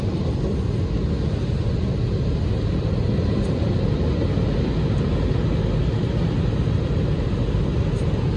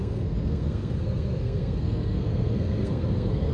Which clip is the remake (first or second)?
second